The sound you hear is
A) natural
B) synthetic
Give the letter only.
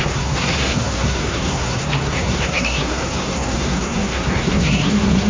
B